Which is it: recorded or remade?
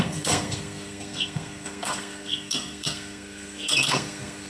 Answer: remade